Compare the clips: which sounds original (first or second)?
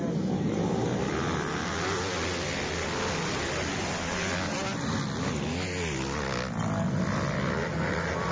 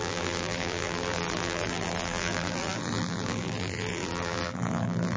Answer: first